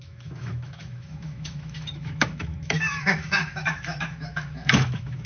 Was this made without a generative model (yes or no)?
no